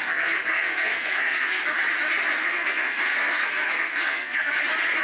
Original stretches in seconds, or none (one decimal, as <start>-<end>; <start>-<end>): 1.6-2.4; 4.6-5.0